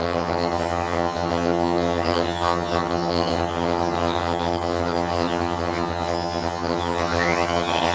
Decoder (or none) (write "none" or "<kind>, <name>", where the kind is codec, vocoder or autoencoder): vocoder, HiFi-GAN